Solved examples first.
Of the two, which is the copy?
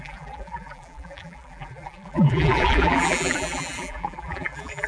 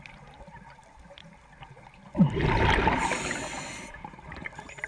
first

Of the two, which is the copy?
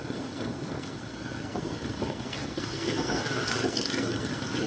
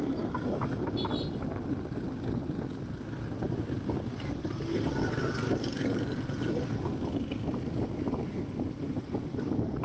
first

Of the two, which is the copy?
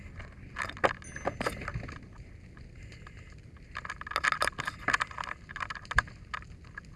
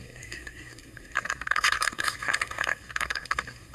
second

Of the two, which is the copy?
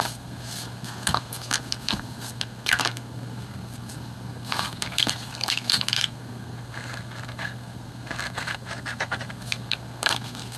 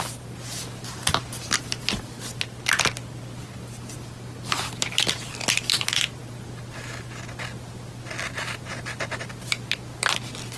first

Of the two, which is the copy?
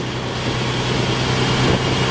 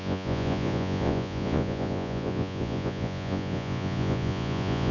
second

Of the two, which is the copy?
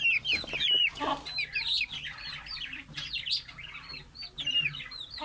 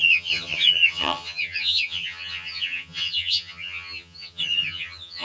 second